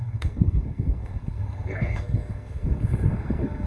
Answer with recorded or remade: remade